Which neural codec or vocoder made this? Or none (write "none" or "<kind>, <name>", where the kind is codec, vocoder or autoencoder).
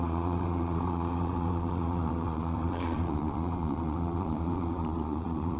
vocoder, Vocos